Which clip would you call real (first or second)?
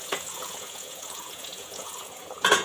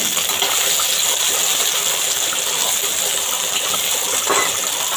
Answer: second